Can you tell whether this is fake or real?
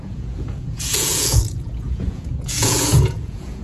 fake